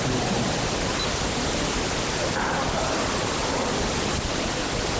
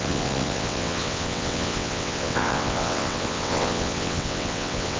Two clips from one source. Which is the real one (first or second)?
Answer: first